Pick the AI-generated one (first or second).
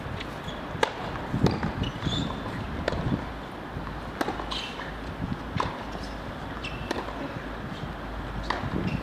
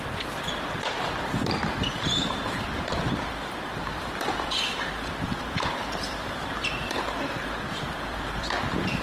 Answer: second